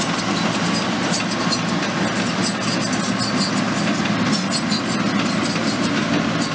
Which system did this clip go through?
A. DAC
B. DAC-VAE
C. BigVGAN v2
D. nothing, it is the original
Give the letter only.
D